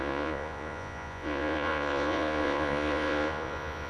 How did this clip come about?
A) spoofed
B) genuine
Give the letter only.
A